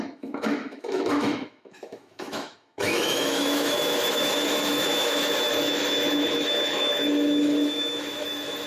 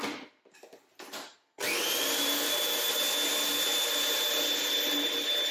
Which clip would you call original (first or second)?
second